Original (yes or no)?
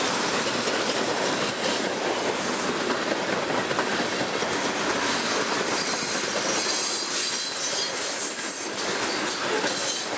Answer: yes